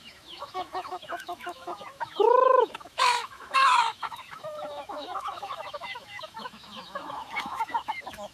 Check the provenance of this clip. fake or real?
fake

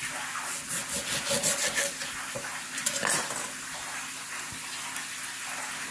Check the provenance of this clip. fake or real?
real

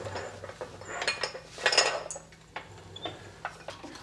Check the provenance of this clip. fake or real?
real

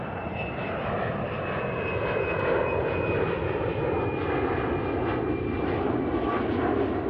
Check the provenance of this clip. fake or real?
real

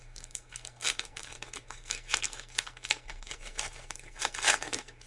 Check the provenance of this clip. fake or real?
fake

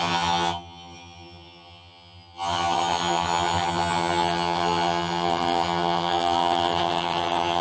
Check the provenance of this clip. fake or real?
fake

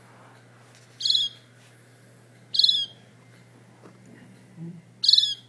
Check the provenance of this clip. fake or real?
real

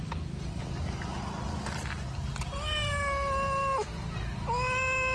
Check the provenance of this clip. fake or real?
real